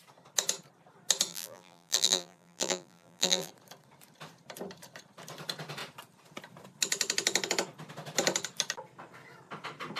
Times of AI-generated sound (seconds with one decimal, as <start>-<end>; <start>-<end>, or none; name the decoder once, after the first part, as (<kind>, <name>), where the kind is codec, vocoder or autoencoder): 1.3-3.5 (vocoder, BigVGAN v2)